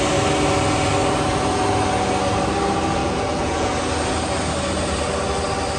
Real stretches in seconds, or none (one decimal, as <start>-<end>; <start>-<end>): 0.0-3.0; 3.7-5.8

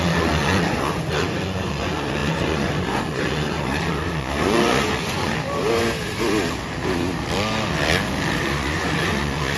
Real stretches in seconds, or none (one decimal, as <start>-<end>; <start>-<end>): 5.3-8.4

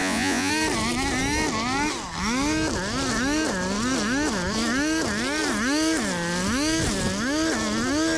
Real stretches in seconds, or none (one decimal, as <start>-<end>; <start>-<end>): 0.5-8.2

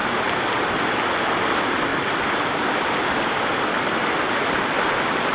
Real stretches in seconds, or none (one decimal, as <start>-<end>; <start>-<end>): 0.0-5.3